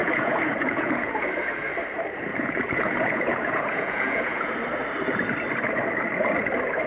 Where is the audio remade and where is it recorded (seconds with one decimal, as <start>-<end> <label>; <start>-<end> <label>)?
0.0-1.1 remade; 1.1-2.3 recorded; 2.3-4.5 remade; 4.5-6.9 recorded